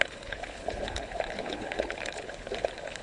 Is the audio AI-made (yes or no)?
yes